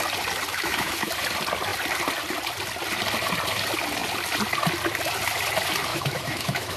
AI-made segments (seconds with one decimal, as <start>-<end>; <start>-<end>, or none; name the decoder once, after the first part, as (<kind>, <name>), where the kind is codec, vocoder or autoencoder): 0.5-1.1 (autoencoder, DAC-VAE); 5.9-6.8